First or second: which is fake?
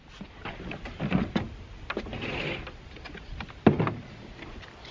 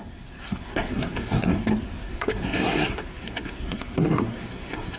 second